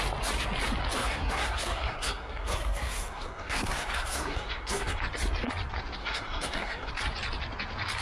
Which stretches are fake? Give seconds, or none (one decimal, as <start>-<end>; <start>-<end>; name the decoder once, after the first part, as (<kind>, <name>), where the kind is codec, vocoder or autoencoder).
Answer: 1.0-5.0 (codec, SNAC); 6.0-6.9